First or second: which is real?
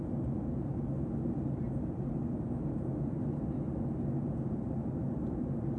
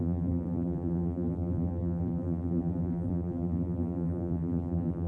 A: first